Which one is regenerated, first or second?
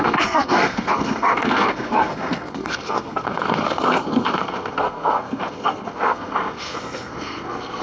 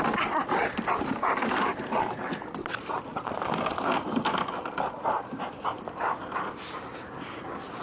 first